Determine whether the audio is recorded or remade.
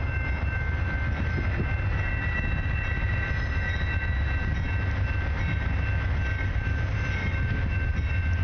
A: recorded